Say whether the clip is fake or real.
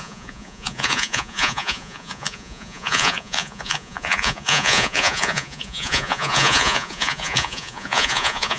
fake